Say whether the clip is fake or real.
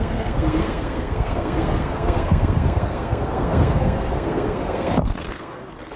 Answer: fake